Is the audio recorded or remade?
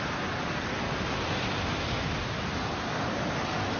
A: recorded